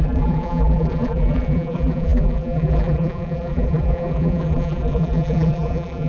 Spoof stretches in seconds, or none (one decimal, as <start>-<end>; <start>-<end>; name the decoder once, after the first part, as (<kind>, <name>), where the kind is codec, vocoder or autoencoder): 0.0-6.1 (vocoder, BigVGAN v2)